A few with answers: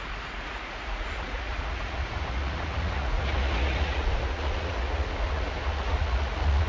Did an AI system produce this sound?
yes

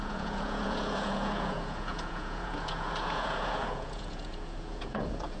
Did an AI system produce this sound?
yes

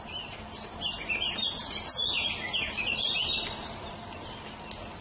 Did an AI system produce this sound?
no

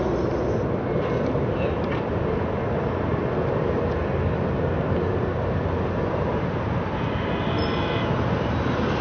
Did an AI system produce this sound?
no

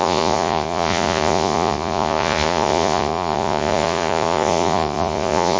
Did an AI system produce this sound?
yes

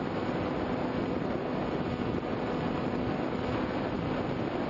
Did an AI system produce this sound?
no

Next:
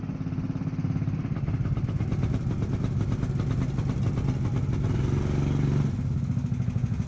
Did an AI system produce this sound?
no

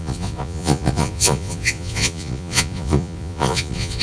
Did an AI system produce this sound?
yes